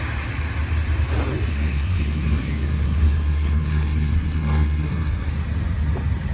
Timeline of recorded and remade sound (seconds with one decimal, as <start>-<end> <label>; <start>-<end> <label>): 0.0-1.5 recorded; 1.5-5.3 remade; 5.3-6.3 recorded